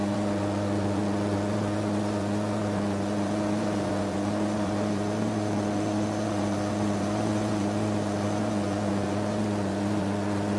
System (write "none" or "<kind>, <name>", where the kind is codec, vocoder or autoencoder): vocoder, Vocos